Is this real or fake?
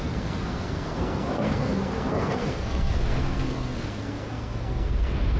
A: fake